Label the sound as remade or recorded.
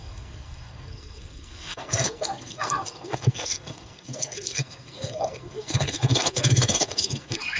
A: remade